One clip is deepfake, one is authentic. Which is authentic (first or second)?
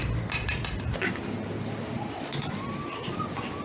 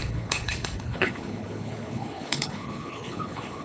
first